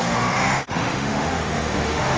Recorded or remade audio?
remade